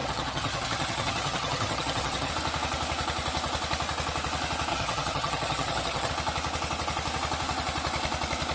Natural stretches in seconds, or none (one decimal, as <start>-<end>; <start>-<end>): 2.3-4.7; 6.1-8.5

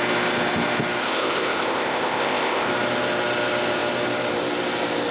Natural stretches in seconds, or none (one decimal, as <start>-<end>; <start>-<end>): 0.0-1.0; 2.7-5.1

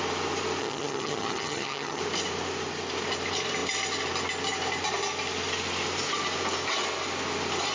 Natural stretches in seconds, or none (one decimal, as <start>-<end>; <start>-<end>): 0.0-0.6; 2.0-7.7

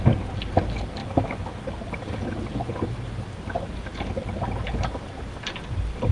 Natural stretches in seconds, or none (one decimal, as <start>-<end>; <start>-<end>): 0.0-1.0; 1.6-6.1

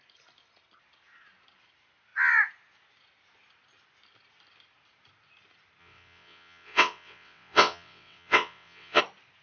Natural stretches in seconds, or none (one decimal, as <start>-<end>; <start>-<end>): 0.0-5.8; 9.0-9.4

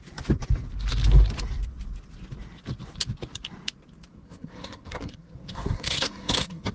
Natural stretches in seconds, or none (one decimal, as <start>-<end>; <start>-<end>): 0.0-4.1

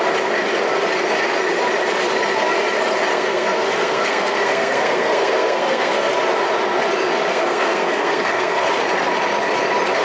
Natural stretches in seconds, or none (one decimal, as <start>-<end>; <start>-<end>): 0.0-3.1; 6.1-7.3; 8.7-10.0

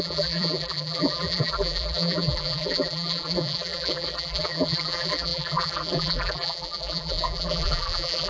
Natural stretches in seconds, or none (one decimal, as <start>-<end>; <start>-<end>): none